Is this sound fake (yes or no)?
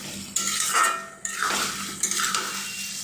no